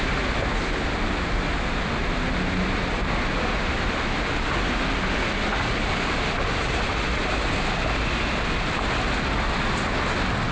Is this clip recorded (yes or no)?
yes